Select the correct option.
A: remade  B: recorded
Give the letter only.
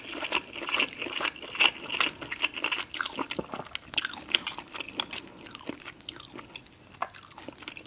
B